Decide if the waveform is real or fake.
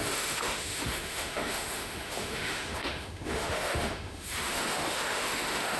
fake